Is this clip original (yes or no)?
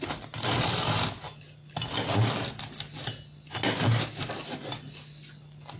yes